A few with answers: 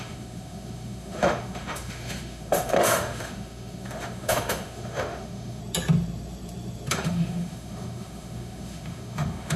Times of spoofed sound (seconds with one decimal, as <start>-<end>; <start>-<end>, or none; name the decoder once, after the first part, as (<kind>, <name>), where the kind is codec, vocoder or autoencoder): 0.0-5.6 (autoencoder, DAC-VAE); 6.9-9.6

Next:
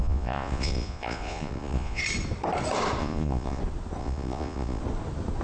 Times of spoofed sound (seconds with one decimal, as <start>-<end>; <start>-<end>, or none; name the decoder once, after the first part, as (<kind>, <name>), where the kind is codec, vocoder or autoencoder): 0.0-2.0 (vocoder, Vocos); 3.0-3.6; 4.0-4.8

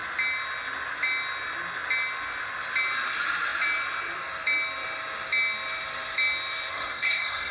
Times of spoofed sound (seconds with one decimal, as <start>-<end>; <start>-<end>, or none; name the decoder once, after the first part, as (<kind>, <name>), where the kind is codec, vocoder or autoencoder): 6.7-7.5 (codec, SNAC)

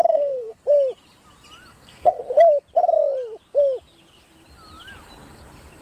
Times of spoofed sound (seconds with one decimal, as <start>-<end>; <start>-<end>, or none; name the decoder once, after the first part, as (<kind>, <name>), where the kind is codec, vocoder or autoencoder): 0.0-0.6 (codec, SNAC); 1.7-2.2

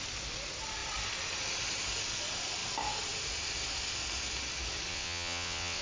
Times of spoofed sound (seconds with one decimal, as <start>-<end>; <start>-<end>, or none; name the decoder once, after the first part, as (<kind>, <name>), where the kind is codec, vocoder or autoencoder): 4.9-5.8 (vocoder, WaveNeXt)